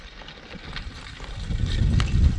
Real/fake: real